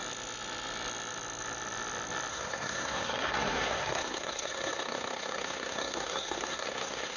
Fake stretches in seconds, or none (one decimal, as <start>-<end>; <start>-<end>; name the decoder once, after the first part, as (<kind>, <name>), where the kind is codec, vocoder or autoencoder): 2.3-7.2 (codec, SNAC)